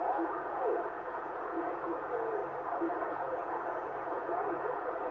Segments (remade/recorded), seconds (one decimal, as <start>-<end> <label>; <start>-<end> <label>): 0.0-2.4 remade; 2.4-3.0 recorded; 3.0-5.1 remade